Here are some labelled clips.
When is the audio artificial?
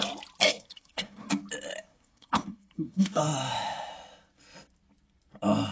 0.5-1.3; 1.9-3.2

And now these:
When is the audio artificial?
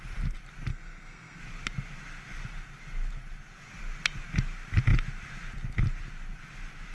0.7-1.4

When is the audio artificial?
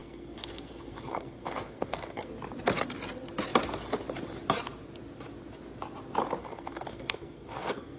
0.0-2.3; 6.4-8.0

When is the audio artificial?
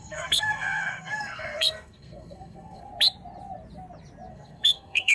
0.0-2.9; 4.3-5.1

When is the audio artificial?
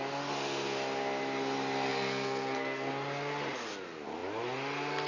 1.9-2.9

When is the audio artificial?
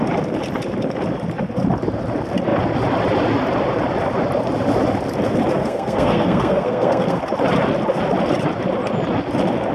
5.6-7.2